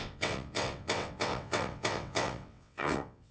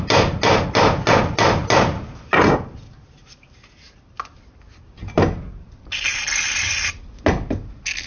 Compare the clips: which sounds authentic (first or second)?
second